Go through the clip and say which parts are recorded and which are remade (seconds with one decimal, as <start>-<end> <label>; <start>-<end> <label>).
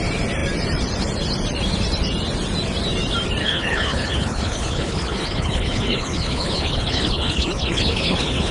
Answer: 0.0-3.4 recorded; 3.4-8.5 remade